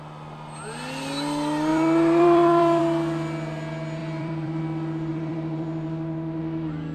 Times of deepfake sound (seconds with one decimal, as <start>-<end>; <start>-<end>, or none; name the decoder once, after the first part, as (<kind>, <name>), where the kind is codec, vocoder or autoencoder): 1.7-2.8 (vocoder, BigVGAN v2); 4.0-4.6; 5.1-6.4